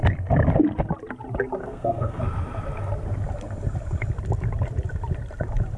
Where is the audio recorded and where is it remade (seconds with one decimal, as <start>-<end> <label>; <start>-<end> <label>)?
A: 0.0-1.6 recorded; 1.6-2.2 remade; 2.2-5.8 recorded